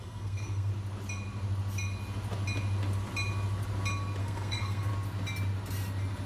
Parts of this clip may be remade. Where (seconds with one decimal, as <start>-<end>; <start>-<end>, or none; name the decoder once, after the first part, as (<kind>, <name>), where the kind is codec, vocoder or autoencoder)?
0.0-0.7 (codec, SNAC); 4.2-4.9